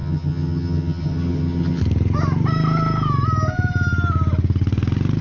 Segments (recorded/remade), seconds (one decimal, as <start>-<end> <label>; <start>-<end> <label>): 0.0-1.8 remade; 1.8-5.2 recorded

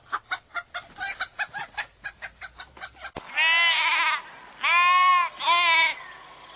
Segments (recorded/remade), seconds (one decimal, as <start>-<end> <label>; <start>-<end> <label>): 0.0-6.6 recorded